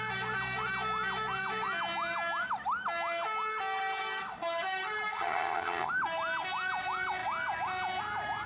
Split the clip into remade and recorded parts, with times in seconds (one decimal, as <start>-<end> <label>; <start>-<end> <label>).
0.0-5.1 recorded; 5.1-5.9 remade; 5.9-8.5 recorded